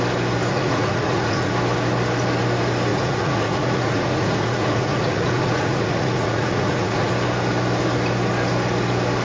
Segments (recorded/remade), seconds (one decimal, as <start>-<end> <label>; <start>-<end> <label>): 0.0-0.5 recorded; 0.5-1.5 remade; 1.5-2.9 recorded; 2.9-7.1 remade; 7.1-9.2 recorded